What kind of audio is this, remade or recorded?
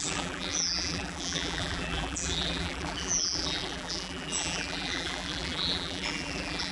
remade